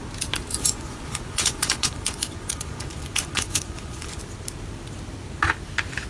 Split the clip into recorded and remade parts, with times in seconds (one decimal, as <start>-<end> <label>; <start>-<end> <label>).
0.0-0.5 recorded; 0.5-4.2 remade; 4.2-6.1 recorded